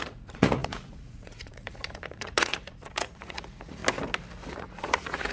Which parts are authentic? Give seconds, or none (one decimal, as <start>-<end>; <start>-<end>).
3.8-4.5

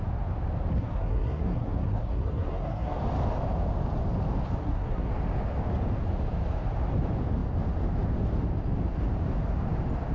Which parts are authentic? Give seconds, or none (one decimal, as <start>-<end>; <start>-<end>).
0.0-0.7; 3.0-4.6; 5.1-10.1

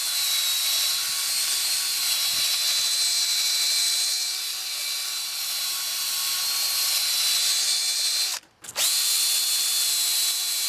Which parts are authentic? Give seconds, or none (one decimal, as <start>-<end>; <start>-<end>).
0.0-10.7

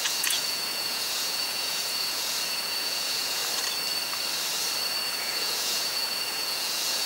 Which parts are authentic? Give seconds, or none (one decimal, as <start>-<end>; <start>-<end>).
3.4-5.1

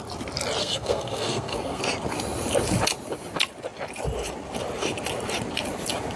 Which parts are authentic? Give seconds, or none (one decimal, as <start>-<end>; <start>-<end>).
0.0-0.6; 1.8-6.2

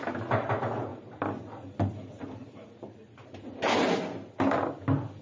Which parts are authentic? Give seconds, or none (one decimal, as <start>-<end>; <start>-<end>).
0.0-5.2

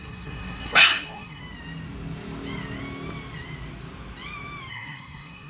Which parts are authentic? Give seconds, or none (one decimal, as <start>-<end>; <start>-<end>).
1.4-4.7

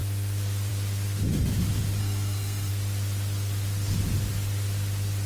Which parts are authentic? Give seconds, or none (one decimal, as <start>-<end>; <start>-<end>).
0.0-2.0; 2.7-5.3